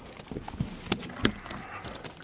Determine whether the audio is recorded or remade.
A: recorded